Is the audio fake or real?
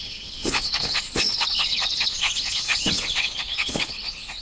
fake